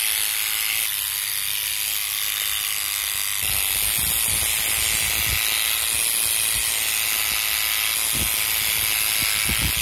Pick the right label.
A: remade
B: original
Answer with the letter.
B